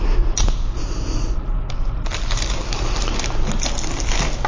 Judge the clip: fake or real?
real